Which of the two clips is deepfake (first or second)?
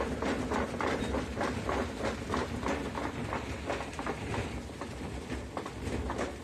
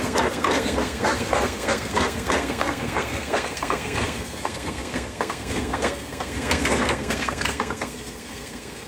second